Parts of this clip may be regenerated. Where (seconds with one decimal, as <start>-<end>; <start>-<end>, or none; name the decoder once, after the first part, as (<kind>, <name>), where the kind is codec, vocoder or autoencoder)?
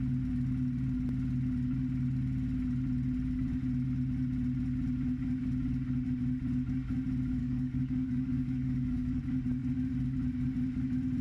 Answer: 7.4-9.2 (codec, DAC)